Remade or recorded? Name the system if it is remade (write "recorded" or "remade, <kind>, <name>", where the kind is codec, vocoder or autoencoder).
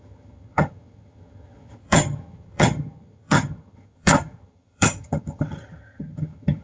remade, vocoder, HiFi-GAN